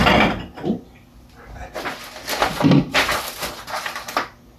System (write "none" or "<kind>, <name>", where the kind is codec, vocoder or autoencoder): none